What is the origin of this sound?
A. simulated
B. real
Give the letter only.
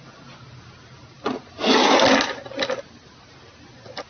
B